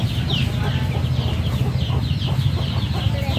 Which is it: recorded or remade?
recorded